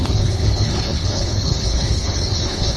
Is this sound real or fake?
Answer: fake